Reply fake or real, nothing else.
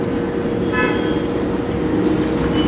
real